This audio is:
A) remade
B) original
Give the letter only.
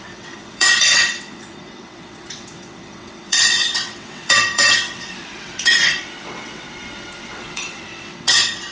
A